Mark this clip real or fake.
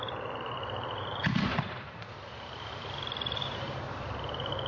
fake